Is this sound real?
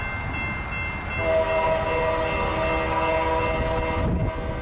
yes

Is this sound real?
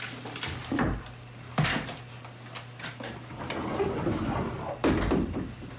yes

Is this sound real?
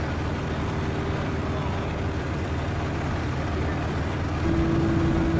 yes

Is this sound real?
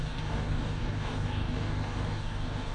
no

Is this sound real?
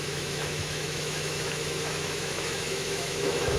no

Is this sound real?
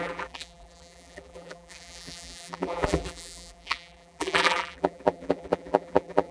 no